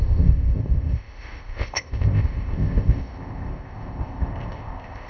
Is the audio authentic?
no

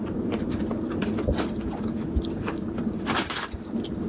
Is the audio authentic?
yes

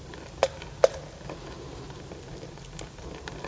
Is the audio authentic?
yes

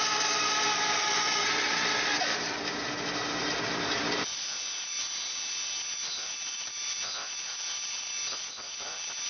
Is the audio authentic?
yes